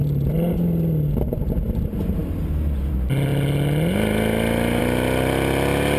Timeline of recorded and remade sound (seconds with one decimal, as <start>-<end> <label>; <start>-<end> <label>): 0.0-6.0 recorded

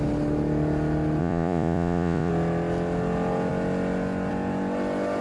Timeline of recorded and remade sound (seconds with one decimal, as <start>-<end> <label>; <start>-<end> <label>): 0.0-1.2 recorded; 1.2-2.3 remade; 2.3-5.2 recorded

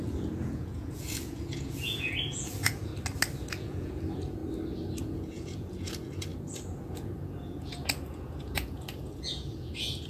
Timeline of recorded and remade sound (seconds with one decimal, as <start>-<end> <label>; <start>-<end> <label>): 0.0-2.9 remade; 2.9-3.5 recorded; 3.5-4.4 remade; 4.4-5.0 recorded; 5.0-10.1 remade